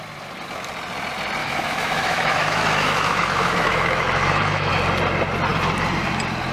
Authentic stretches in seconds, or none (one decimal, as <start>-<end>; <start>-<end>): 0.0-1.4; 4.7-6.5